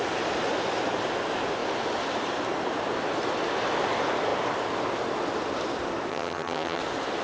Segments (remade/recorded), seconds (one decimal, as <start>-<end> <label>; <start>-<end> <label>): 0.0-6.1 recorded; 6.1-6.8 remade; 6.8-7.2 recorded